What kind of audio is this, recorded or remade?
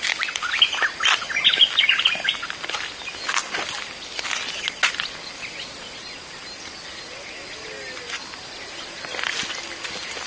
recorded